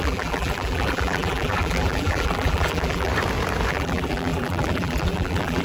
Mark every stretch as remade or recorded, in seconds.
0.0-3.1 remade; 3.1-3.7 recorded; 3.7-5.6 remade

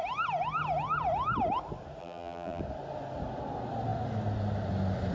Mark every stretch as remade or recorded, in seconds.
0.0-2.0 recorded; 2.0-2.6 remade; 2.6-5.1 recorded

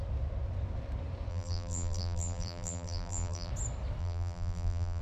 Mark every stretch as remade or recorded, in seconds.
0.0-1.3 recorded; 1.3-3.5 remade; 3.5-4.0 recorded; 4.0-5.0 remade

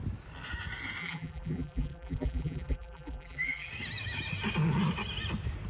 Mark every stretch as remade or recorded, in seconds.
0.0-1.0 recorded; 1.0-3.7 remade; 3.7-5.7 recorded

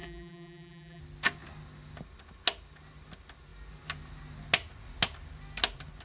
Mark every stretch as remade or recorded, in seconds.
0.0-1.0 remade; 1.0-6.0 recorded